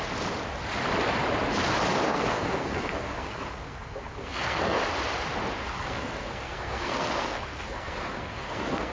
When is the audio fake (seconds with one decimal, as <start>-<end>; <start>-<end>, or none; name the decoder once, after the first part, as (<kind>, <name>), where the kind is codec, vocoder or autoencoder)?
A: 2.1-4.8 (codec, SNAC); 5.6-8.9

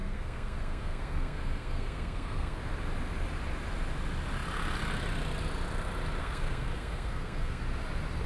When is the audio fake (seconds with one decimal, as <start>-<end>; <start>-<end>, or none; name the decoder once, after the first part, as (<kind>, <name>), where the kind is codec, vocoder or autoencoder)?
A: 0.0-2.6 (codec, SNAC); 6.2-7.6

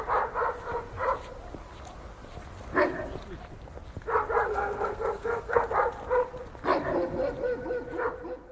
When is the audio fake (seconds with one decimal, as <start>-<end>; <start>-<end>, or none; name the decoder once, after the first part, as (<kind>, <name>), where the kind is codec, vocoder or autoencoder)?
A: 4.5-5.7 (codec, SNAC)

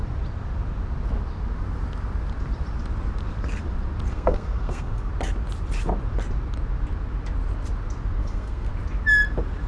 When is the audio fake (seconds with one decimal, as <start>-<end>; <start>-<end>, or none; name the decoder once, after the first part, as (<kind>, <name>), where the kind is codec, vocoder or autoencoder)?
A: 4.1-5.1 (codec, SNAC); 8.2-8.7

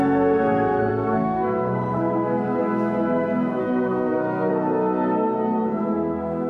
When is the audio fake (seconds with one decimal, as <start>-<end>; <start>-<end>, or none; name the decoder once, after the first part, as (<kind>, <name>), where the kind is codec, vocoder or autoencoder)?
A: 0.9-2.6 (codec, SNAC); 3.6-4.5

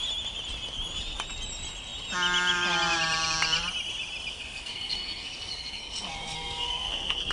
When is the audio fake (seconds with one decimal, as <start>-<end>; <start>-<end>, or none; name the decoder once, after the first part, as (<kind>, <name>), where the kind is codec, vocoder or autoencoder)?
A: 4.3-7.3 (codec, SNAC)

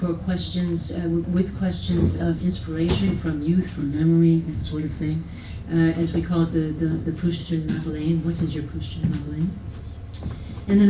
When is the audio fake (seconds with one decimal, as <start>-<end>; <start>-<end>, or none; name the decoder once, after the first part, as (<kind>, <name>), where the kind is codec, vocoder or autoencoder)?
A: 2.0-2.5 (codec, SNAC); 3.8-5.5; 7.4-7.9

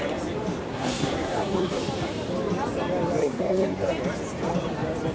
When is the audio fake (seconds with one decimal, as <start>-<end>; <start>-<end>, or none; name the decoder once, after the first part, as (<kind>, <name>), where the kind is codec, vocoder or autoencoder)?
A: 0.7-1.8 (codec, SNAC); 3.2-3.9